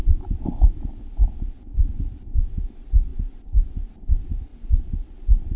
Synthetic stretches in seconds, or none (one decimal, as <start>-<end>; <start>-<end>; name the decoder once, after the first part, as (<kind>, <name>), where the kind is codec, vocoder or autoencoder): 0.0-0.6 (vocoder, BigVGAN v2)